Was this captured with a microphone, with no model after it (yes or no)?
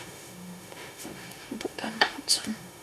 no